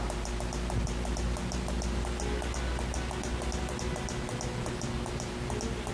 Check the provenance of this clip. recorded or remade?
recorded